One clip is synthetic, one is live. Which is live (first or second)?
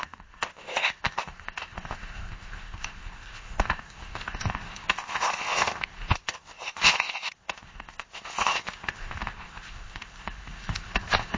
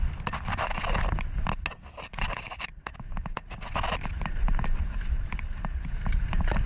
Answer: second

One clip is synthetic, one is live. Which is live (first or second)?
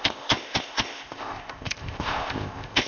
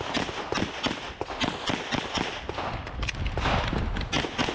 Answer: second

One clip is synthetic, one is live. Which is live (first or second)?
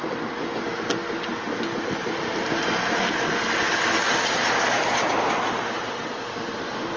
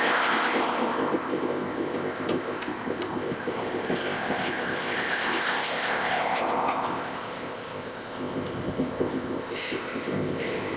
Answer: first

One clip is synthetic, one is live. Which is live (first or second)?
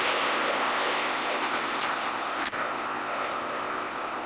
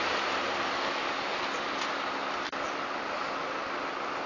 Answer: second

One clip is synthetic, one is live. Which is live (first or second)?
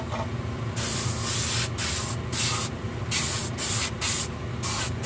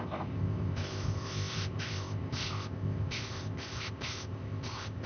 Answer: first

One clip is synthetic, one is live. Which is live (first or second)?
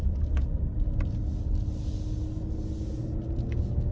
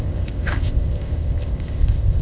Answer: first